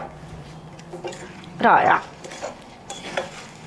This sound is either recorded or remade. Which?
remade